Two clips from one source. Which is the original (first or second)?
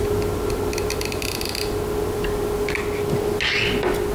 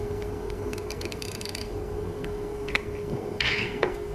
first